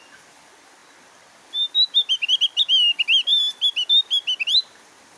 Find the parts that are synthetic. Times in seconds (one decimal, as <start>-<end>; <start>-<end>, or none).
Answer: none